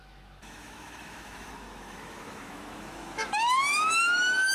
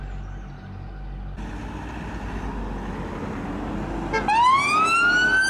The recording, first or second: second